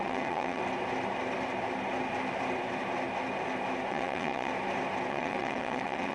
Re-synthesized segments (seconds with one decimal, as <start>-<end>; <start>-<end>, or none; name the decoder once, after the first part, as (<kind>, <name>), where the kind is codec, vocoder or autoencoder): 0.0-0.6 (vocoder, WaveNeXt); 3.9-4.5; 5.1-6.1